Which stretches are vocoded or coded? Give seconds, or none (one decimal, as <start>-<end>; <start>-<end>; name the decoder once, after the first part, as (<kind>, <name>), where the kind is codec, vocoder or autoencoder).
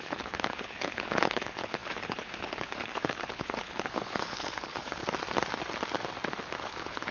0.0-5.0 (codec, HILCodec); 6.6-7.1